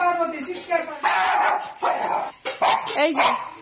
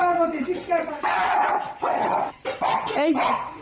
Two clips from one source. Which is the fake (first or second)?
second